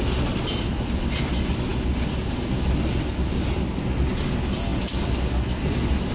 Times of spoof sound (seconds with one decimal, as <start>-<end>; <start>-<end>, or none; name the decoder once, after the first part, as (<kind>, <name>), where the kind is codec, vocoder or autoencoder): none